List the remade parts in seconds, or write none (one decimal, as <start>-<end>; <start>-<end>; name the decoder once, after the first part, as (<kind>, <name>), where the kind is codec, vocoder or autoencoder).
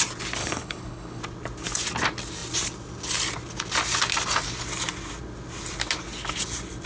0.4-1.2 (codec, HILCodec)